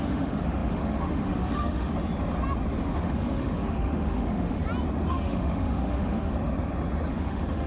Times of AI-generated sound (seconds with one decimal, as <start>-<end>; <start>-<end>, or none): 0.0-1.9; 3.0-4.6; 5.1-6.3; 7.1-7.7